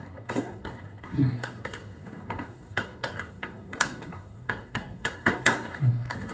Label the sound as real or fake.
fake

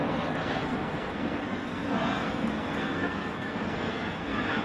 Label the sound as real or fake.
fake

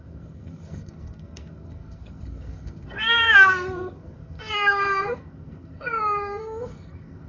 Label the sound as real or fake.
fake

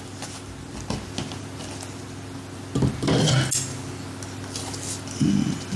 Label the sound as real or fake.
real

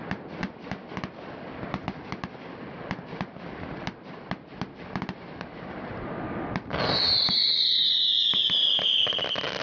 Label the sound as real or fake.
real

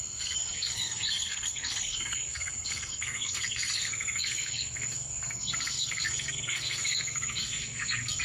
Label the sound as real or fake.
fake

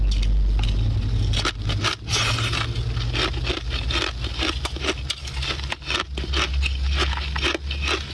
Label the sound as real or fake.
real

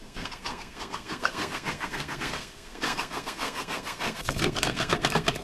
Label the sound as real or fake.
fake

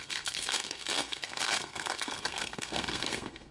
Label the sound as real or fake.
fake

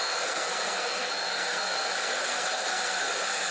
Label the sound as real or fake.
fake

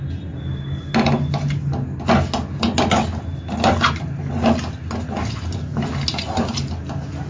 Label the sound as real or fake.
real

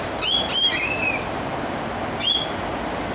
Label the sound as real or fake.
real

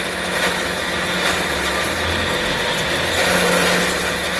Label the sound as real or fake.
real